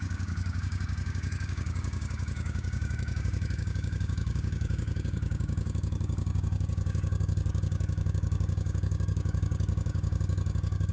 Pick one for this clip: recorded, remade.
remade